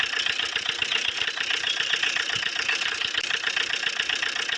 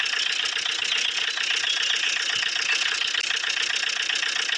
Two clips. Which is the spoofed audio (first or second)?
first